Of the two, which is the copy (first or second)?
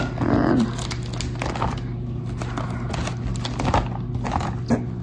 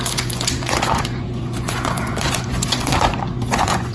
second